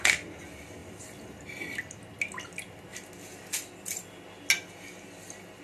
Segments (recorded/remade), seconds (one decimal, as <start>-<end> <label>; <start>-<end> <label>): 0.0-5.6 recorded